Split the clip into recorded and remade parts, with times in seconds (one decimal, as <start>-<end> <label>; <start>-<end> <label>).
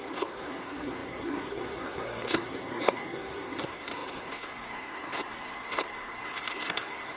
0.0-7.2 remade